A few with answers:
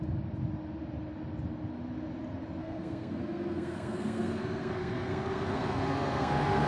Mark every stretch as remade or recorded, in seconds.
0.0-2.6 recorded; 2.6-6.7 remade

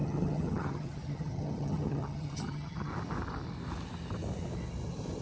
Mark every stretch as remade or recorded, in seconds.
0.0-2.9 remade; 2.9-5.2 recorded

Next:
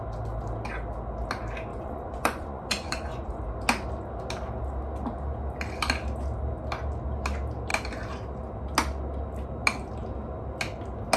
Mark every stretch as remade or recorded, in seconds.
0.0-1.7 recorded; 1.7-3.4 remade; 3.4-11.2 recorded

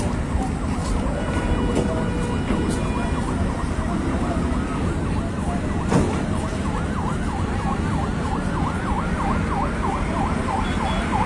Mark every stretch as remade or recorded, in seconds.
0.0-11.3 recorded

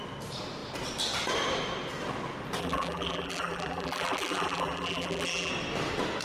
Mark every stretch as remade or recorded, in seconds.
0.0-2.6 recorded; 2.6-5.5 remade; 5.5-6.2 recorded